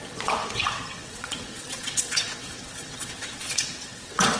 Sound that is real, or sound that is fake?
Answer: fake